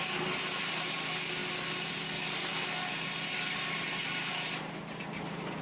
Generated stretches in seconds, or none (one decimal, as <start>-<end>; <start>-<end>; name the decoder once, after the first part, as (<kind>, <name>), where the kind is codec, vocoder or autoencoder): none